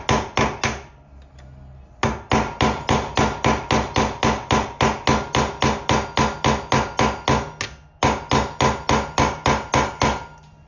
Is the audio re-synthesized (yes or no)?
no